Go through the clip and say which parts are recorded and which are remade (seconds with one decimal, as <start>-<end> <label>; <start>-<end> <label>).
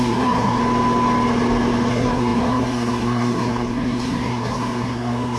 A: 0.0-0.6 remade; 0.6-1.9 recorded; 1.9-5.4 remade